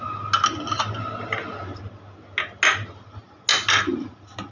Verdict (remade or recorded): recorded